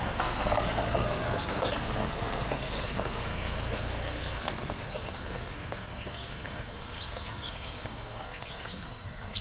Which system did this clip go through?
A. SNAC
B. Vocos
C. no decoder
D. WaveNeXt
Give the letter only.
A